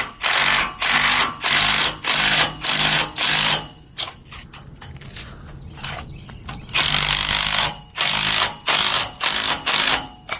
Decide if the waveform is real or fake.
real